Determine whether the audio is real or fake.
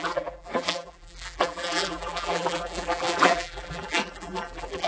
fake